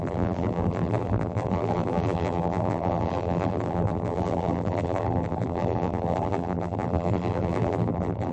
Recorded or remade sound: remade